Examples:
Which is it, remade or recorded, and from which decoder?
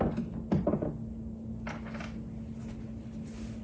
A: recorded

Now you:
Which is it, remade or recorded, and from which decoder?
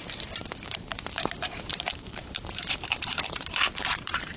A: remade, vocoder, BigVGAN v2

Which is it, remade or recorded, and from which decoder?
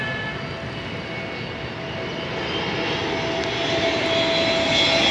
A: recorded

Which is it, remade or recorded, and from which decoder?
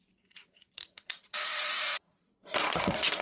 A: remade, vocoder, Vocos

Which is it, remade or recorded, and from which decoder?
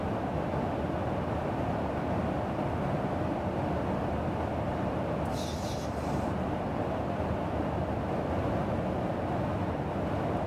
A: recorded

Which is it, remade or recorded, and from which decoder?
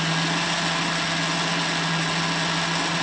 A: recorded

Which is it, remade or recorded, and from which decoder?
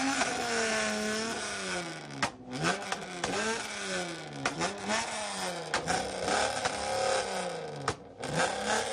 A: recorded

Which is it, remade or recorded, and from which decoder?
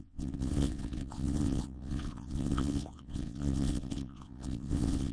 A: remade, vocoder, WaveNeXt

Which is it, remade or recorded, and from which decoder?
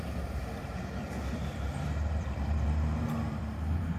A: remade, vocoder, BigVGAN v2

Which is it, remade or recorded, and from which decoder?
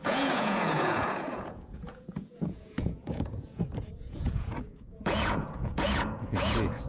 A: remade, vocoder, Vocos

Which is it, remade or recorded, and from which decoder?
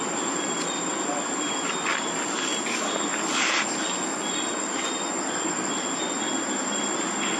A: recorded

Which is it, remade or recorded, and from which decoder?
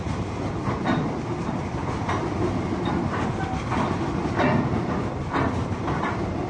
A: recorded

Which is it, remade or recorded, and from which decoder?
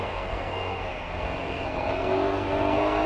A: remade, codec, SNAC